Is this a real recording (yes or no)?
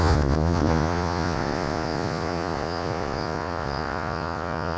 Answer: no